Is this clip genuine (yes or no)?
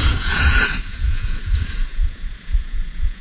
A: no